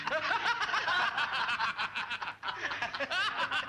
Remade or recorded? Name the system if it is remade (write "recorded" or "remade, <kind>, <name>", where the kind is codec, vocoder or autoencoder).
recorded